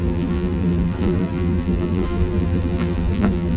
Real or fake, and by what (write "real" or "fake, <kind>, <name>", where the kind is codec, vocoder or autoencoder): fake, vocoder, BigVGAN v2